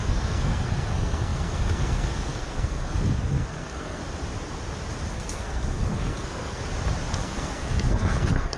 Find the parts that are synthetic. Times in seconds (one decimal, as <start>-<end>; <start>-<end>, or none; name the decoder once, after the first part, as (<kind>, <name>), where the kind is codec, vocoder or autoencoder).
0.0-4.0 (codec, SNAC); 5.1-6.6; 7.1-8.6